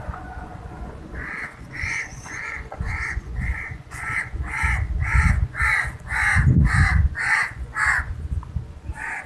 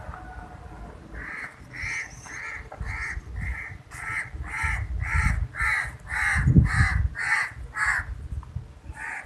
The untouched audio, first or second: second